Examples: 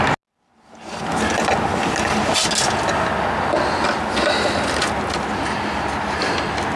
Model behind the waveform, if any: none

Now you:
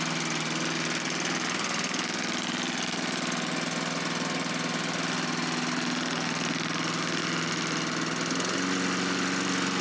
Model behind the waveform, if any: none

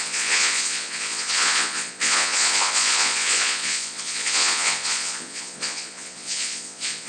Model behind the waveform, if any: vocoder, Vocos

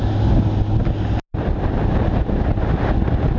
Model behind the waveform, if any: none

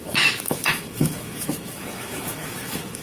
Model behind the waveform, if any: autoencoder, DAC-VAE